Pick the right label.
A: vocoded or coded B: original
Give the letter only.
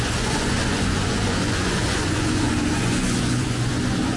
A